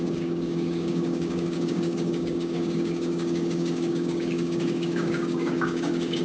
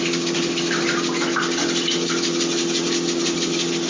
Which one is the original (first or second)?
second